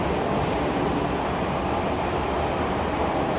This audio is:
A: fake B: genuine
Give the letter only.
B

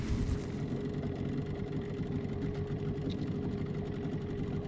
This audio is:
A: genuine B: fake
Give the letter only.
A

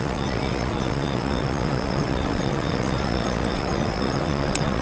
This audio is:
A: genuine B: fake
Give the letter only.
B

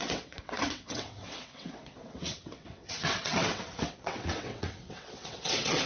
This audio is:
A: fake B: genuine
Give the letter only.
A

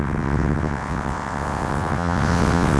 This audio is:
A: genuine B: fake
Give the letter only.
B